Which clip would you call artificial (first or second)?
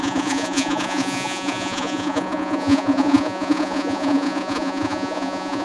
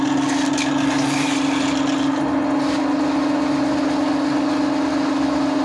first